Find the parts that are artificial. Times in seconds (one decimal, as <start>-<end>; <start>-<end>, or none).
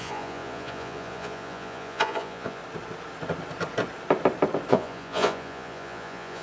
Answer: 0.0-2.6; 4.7-6.4